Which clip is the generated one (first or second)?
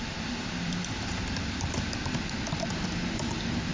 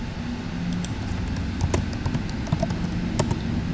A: first